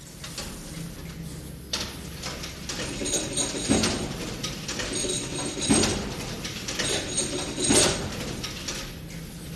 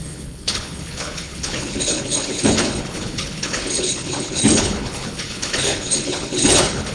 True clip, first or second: first